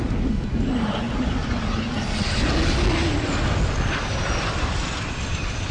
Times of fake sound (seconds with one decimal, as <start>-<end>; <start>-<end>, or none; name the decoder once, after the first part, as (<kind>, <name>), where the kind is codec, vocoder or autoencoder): none